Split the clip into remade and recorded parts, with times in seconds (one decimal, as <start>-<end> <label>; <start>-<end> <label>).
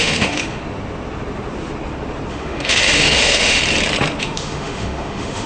0.0-0.6 remade; 0.6-2.3 recorded; 2.3-3.6 remade; 3.6-4.2 recorded; 4.2-5.5 remade